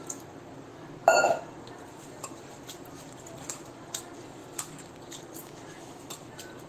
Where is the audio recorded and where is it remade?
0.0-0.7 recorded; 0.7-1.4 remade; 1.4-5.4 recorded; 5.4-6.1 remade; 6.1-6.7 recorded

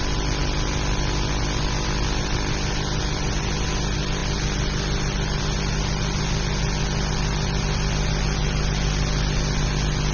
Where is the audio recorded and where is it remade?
0.0-10.1 recorded

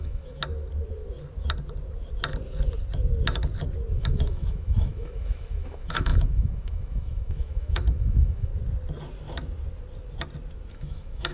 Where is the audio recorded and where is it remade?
0.0-0.4 remade; 0.4-3.9 recorded; 3.9-8.5 remade; 8.5-10.7 recorded; 10.7-11.3 remade

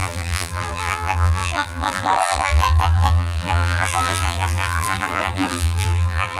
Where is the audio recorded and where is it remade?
0.0-6.4 remade